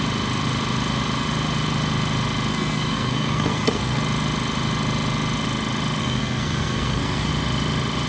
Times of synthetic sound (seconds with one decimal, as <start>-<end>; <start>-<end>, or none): 2.5-4.0; 6.0-7.3